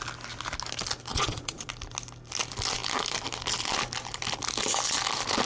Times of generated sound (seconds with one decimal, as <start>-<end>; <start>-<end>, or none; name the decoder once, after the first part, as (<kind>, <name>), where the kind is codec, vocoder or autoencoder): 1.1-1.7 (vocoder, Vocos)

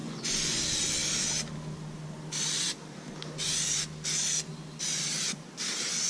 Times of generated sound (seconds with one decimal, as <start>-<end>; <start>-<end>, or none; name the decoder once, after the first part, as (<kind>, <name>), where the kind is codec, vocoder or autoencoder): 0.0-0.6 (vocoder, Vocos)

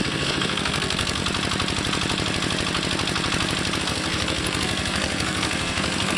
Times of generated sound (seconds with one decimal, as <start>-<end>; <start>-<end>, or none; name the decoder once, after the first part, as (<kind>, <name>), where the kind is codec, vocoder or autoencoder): 0.0-1.2 (codec, SNAC); 3.8-6.2